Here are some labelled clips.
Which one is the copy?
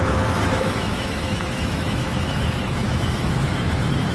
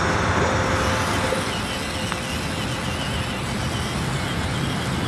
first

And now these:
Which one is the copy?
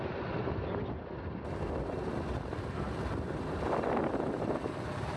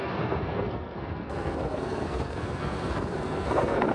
second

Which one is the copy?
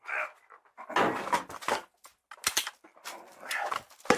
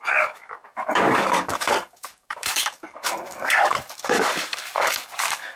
second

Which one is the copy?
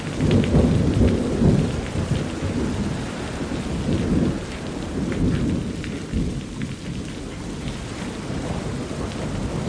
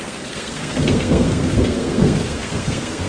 second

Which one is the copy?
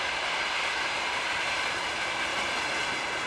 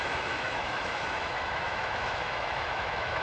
second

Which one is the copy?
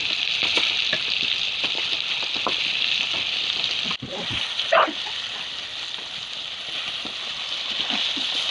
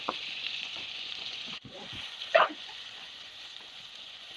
second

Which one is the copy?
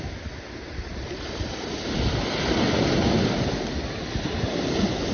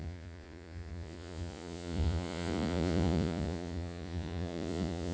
second